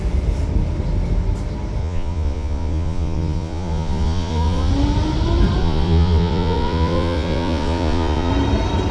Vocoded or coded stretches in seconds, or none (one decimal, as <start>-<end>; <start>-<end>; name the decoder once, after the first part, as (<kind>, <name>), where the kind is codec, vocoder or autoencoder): 1.8-4.7 (vocoder, Vocos); 5.6-8.3